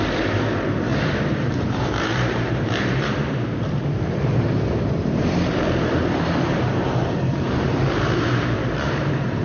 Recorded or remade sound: remade